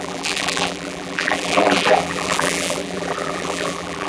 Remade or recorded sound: remade